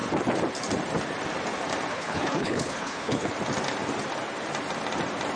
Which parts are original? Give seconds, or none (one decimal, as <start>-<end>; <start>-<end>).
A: 0.0-1.9; 3.3-5.4